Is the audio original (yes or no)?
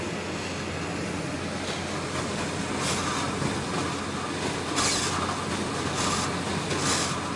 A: yes